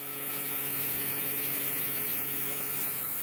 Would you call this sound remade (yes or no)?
yes